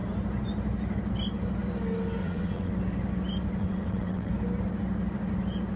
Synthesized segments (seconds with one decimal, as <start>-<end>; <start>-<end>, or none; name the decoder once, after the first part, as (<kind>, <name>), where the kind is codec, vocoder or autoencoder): 2.2-2.7 (vocoder, WaveNeXt); 3.6-4.3